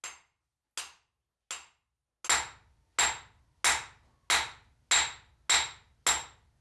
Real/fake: real